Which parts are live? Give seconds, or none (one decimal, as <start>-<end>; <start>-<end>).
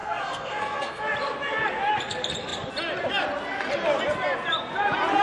1.0-5.2